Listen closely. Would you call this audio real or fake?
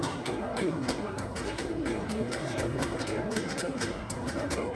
fake